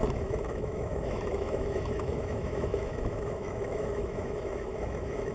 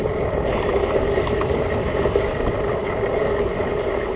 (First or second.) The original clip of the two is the second